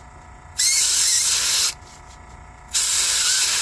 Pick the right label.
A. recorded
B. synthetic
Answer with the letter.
A